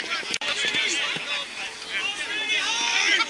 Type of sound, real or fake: real